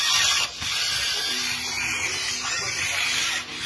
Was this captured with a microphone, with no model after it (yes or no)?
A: yes